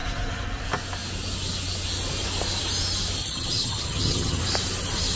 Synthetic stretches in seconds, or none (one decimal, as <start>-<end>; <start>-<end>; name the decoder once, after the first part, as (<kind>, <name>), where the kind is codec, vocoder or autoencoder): 3.2-4.4 (vocoder, HiFi-GAN)